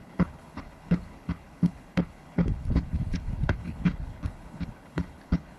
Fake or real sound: fake